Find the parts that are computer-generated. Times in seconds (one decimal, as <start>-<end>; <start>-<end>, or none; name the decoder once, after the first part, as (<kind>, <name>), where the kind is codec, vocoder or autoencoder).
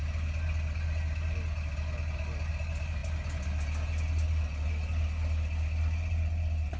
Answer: none